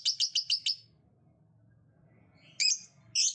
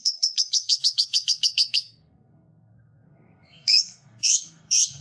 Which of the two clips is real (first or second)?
first